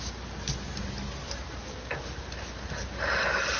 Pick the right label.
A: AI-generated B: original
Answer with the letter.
B